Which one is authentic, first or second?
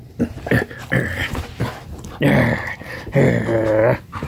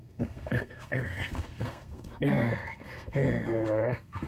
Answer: first